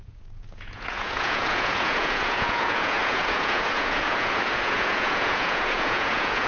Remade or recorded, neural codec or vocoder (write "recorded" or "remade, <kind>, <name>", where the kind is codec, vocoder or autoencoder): remade, vocoder, Vocos